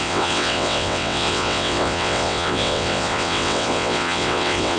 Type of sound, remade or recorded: remade